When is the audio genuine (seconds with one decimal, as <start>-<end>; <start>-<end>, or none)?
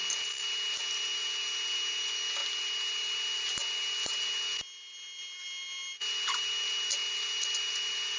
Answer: 0.0-8.2